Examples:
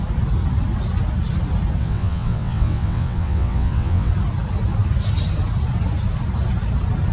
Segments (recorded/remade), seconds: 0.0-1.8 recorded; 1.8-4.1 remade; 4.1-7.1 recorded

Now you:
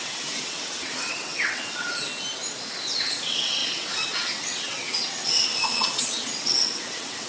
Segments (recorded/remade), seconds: 0.0-2.1 remade; 2.1-3.0 recorded; 3.0-7.3 remade